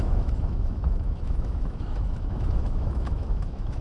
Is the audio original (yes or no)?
no